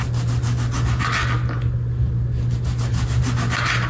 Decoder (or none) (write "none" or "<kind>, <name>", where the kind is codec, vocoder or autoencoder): none